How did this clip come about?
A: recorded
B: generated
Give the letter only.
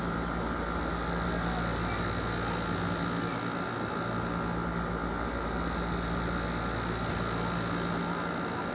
A